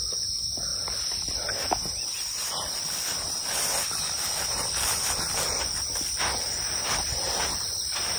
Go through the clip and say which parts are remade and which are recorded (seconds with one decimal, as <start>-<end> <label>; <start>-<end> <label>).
0.0-8.2 recorded